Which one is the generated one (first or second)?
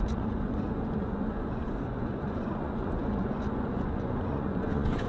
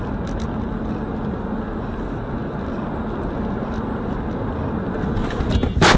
first